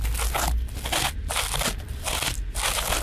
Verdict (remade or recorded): recorded